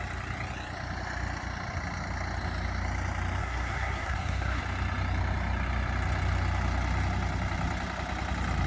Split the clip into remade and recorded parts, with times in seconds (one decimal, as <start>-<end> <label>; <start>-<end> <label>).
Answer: 0.0-3.4 recorded; 3.4-4.6 remade; 4.6-8.7 recorded